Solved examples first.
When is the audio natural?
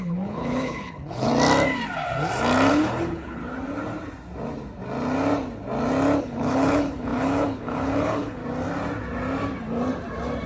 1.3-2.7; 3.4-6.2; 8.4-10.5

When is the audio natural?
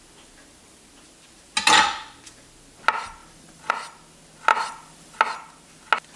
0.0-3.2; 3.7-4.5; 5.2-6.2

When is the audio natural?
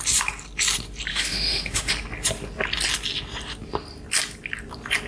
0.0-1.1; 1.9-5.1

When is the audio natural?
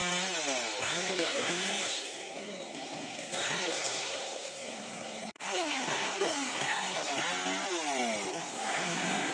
0.0-0.8; 7.1-8.3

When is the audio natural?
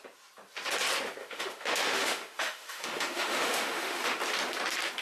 0.0-1.2; 4.2-5.0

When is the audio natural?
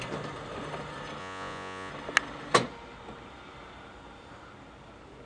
0.0-1.2; 1.9-5.3